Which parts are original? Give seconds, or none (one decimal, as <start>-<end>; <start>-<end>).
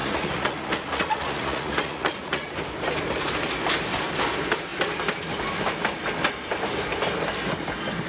2.5-8.1